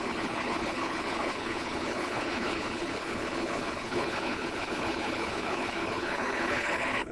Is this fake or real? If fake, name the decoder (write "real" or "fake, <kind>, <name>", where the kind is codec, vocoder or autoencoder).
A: fake, codec, HILCodec